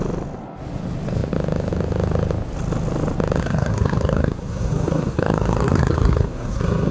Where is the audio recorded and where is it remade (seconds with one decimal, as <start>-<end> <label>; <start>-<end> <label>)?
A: 0.0-3.4 recorded; 3.4-6.9 remade